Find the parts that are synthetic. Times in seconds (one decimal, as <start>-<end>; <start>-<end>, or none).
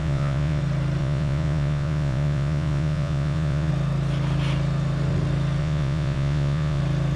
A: 0.0-0.6; 1.0-3.7; 5.6-6.8